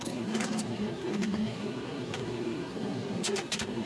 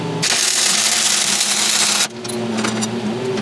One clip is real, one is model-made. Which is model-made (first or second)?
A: first